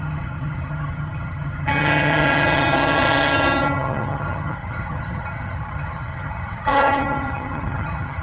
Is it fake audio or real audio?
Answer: fake